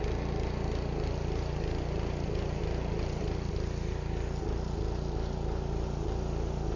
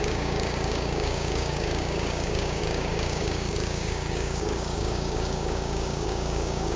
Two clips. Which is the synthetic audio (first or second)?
second